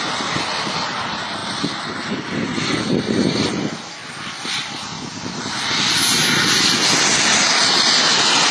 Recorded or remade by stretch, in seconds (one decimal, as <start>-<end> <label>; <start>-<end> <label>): 0.0-4.0 remade; 4.0-6.8 recorded; 6.8-8.5 remade